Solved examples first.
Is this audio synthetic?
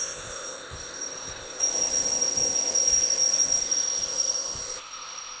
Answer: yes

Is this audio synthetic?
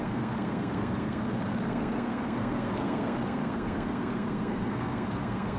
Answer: yes